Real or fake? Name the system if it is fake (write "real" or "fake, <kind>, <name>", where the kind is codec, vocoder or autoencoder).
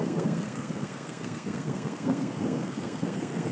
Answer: fake, codec, SNAC